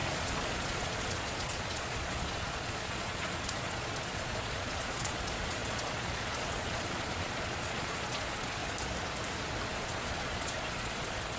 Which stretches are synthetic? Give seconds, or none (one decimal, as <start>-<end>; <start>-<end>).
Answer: 0.0-8.6; 9.7-11.4